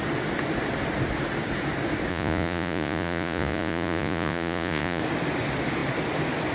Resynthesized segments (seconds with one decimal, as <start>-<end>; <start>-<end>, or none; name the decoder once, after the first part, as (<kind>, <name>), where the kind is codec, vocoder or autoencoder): 2.1-5.0 (vocoder, Vocos)